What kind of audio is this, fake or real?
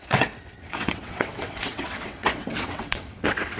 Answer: fake